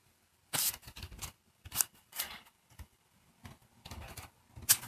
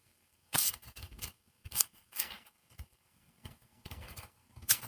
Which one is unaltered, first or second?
first